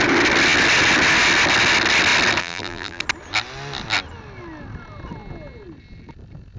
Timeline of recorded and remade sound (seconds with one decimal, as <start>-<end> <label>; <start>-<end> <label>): 0.0-2.4 recorded; 2.4-3.0 remade; 3.0-6.6 recorded